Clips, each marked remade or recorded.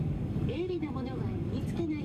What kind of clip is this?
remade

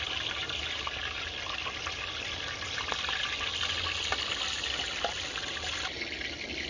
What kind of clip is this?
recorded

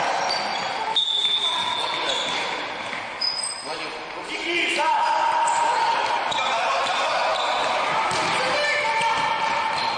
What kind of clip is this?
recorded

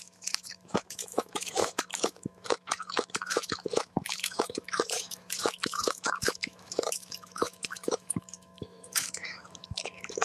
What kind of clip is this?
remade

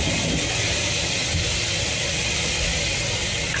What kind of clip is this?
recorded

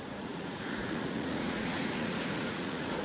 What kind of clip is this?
remade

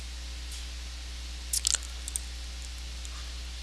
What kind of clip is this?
recorded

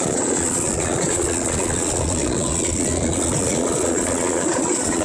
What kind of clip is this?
remade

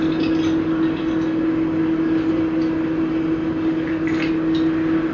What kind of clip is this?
recorded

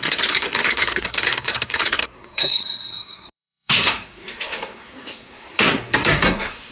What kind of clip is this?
remade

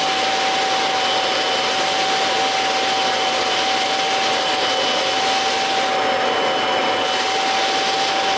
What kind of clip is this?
recorded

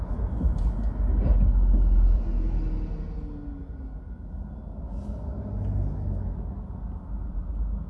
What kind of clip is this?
recorded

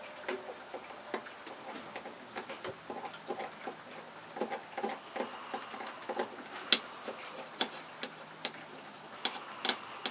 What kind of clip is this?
recorded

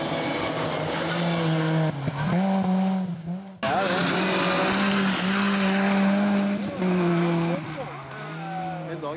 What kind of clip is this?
recorded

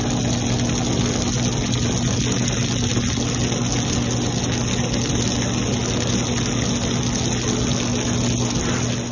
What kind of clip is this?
recorded